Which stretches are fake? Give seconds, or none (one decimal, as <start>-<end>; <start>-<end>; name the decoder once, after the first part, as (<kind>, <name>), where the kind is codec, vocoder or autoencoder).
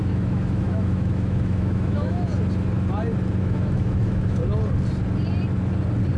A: 0.0-2.3 (autoencoder, DAC-VAE); 3.4-4.4